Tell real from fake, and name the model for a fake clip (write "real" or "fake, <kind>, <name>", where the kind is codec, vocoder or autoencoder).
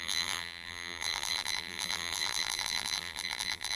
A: fake, vocoder, BigVGAN v2